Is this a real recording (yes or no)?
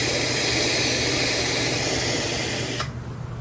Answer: yes